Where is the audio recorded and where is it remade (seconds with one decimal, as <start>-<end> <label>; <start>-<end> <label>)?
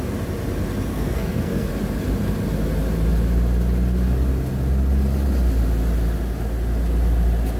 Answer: 0.0-0.9 recorded; 0.9-1.7 remade; 1.7-7.6 recorded